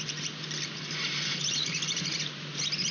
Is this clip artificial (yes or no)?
yes